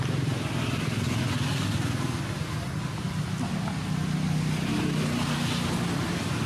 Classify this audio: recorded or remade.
recorded